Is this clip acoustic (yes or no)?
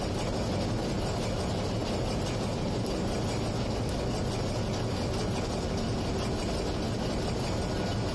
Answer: yes